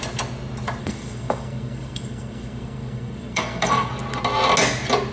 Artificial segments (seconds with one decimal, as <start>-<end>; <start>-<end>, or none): 0.8-3.9